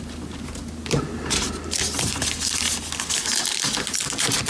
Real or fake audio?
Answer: real